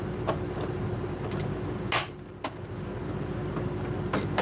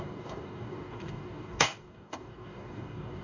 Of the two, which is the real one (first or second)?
first